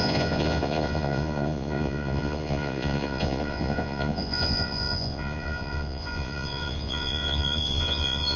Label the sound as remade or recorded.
remade